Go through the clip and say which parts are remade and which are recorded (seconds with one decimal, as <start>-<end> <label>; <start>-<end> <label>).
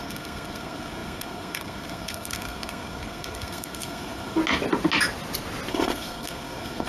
0.0-4.4 remade; 4.4-5.7 recorded; 5.7-6.9 remade